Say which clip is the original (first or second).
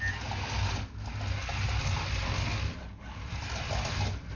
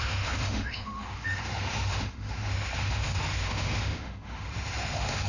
first